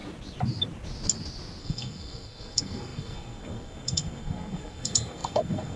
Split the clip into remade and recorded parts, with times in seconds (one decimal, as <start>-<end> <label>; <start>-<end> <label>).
0.0-1.6 recorded; 1.6-5.8 remade